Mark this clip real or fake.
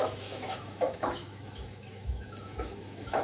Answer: fake